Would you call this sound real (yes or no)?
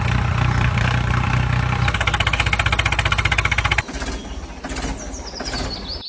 yes